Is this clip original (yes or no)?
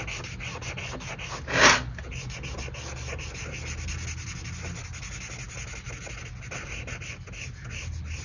yes